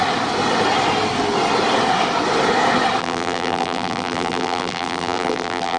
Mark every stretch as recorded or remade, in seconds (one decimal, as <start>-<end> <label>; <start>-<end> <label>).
0.0-3.0 recorded; 3.0-5.8 remade